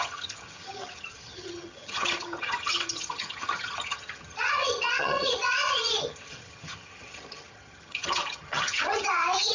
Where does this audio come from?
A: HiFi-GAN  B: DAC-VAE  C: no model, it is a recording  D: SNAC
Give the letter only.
A